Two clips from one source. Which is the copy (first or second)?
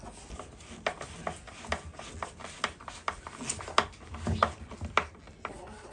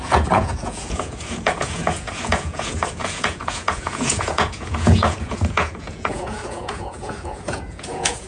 second